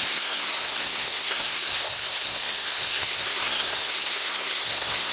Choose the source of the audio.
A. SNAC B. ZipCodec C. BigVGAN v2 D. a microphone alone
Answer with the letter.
A